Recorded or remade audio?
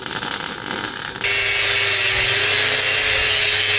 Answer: recorded